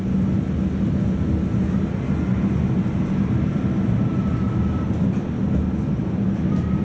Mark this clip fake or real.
real